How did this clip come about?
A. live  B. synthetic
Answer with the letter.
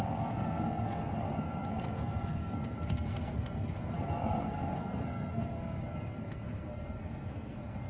B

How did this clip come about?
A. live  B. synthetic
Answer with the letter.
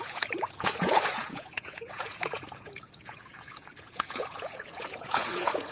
B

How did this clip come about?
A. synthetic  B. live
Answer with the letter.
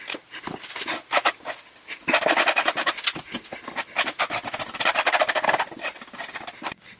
B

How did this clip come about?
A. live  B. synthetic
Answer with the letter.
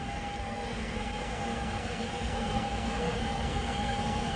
B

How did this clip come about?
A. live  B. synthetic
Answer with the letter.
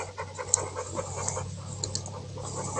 A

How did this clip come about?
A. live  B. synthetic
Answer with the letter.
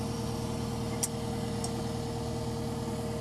A